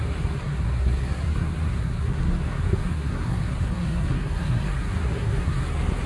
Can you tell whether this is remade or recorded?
remade